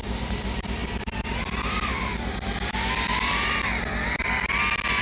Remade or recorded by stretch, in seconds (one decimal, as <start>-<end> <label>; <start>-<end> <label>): 0.0-1.9 remade; 1.9-5.0 recorded